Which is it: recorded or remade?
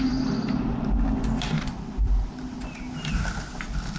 recorded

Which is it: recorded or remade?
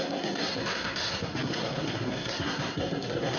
remade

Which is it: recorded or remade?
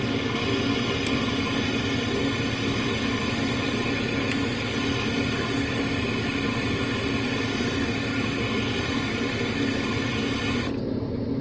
recorded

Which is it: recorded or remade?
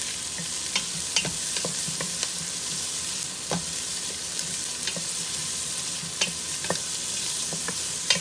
recorded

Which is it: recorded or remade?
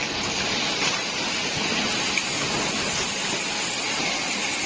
recorded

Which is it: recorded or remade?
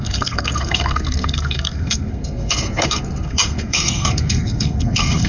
remade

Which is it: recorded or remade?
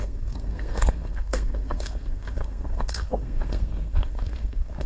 remade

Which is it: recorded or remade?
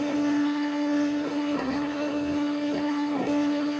remade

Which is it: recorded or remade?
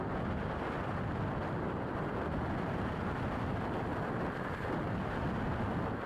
recorded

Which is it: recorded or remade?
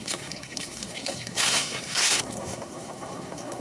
remade